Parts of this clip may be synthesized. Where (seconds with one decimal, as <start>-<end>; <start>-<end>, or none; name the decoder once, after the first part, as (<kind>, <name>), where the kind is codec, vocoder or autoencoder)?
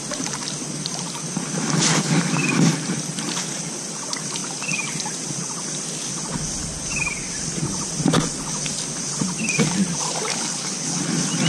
10.3-11.0 (codec, HILCodec)